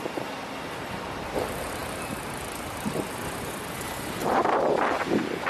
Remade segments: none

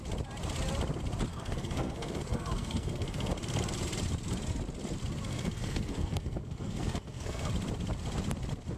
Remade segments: 1.3-3.3 (codec, SNAC); 5.3-7.5

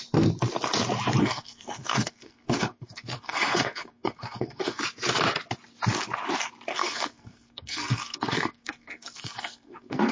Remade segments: 1.2-4.8 (codec, SNAC); 6.7-10.1

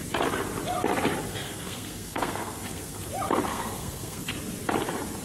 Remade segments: 1.3-3.1 (codec, SNAC); 3.5-4.3

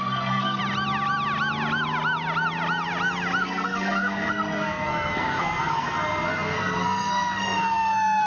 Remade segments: 0.0-0.6 (codec, SNAC); 3.4-8.3